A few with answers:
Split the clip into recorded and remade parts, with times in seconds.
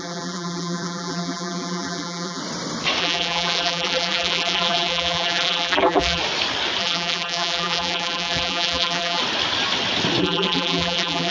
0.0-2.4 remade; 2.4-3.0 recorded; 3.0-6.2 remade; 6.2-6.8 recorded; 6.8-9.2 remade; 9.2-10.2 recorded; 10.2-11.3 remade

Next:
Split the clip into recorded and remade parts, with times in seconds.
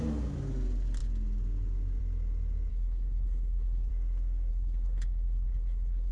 0.0-2.7 recorded; 2.7-3.9 remade; 3.9-4.5 recorded; 4.5-6.1 remade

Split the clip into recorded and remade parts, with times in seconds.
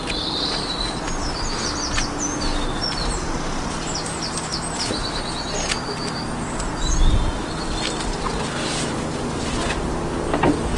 0.0-10.8 recorded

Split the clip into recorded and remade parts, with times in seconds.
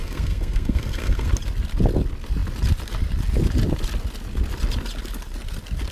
0.0-1.3 remade; 1.3-5.9 recorded